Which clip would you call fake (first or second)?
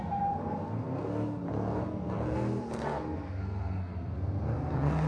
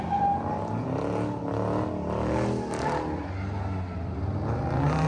first